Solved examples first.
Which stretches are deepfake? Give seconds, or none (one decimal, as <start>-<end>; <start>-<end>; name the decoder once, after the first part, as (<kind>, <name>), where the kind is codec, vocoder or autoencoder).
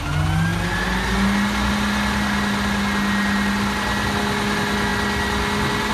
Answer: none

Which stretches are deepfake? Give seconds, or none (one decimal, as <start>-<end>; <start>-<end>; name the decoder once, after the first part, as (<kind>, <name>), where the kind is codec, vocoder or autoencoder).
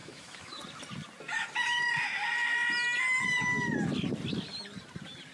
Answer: 0.0-0.6 (autoencoder, DAC-VAE)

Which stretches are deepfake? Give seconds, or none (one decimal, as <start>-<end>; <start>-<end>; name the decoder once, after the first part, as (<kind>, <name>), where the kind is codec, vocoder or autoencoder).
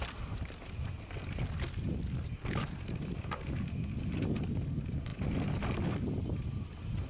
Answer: none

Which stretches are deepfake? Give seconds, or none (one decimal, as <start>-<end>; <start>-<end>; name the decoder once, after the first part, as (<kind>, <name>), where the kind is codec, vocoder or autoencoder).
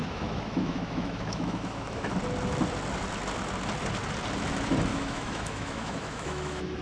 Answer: 0.0-2.1 (autoencoder, DAC-VAE); 4.9-6.8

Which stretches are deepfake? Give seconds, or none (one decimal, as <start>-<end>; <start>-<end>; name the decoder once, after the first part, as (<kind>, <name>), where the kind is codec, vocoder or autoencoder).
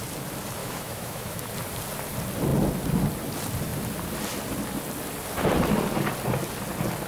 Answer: 0.6-1.5 (autoencoder, DAC-VAE)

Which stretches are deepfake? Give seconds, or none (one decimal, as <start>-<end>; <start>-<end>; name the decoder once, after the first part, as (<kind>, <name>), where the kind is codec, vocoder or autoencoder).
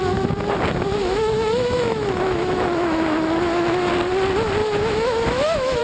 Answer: 1.0-3.9 (autoencoder, DAC-VAE); 4.6-5.8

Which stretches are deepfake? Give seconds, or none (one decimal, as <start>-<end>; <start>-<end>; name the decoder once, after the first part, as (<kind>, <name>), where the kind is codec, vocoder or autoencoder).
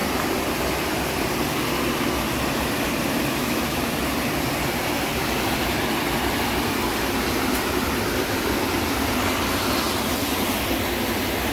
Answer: 3.2-3.8 (autoencoder, DAC-VAE)